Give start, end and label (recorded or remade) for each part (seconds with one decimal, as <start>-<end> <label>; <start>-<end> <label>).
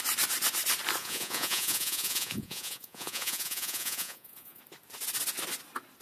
0.0-1.0 recorded; 1.0-4.6 remade; 4.6-6.0 recorded